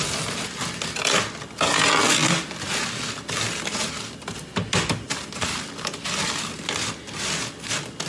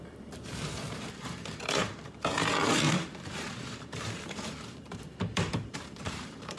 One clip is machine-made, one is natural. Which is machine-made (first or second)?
second